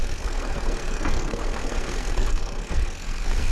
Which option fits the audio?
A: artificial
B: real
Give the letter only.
A